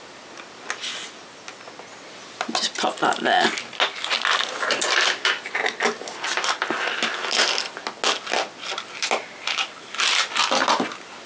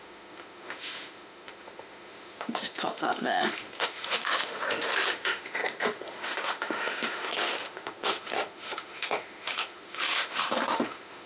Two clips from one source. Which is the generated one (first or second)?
second